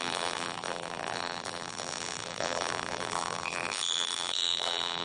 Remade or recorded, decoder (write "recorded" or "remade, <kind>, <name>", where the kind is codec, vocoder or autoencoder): remade, vocoder, BigVGAN v2